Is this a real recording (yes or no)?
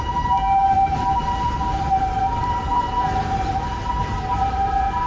yes